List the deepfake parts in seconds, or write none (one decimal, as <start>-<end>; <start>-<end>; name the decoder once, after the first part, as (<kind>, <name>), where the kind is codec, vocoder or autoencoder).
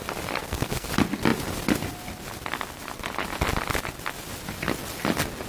0.4-0.9 (codec, SNAC)